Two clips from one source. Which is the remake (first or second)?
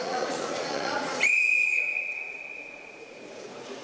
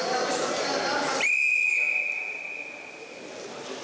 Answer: first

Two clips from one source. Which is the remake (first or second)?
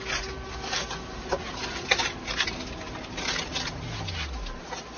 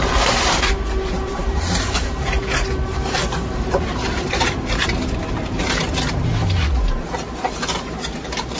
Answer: second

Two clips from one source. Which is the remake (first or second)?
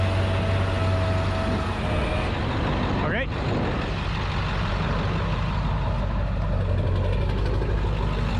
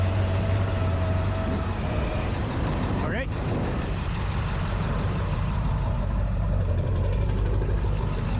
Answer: second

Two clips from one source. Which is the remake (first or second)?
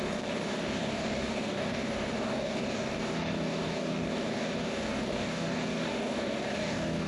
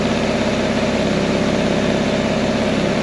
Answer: first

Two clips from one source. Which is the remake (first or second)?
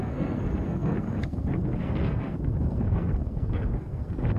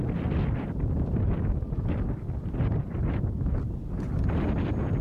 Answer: first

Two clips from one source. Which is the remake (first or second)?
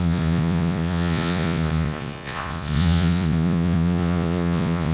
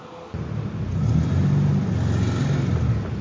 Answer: first